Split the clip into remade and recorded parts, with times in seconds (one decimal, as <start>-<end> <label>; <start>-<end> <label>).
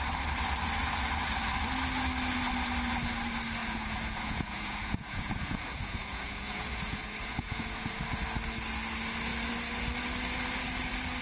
0.0-3.6 recorded; 3.6-8.0 remade; 8.0-11.2 recorded